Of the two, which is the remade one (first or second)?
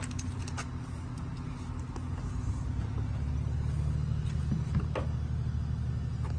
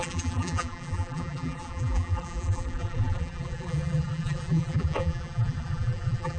second